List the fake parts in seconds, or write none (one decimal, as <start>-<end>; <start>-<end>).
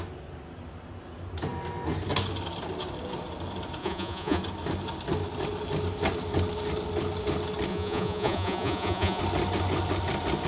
3.8-4.4; 7.7-9.2